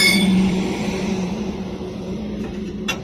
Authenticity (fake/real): fake